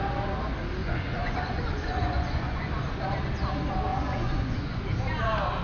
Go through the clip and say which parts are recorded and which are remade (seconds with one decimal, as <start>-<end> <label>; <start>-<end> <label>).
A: 0.0-0.8 recorded; 0.8-2.7 remade; 2.7-3.9 recorded; 3.9-4.8 remade; 4.8-5.6 recorded

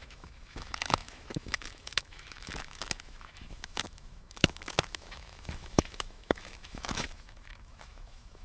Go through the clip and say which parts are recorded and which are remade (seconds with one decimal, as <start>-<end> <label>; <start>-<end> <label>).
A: 0.0-8.4 remade